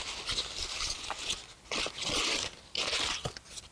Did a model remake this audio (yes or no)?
no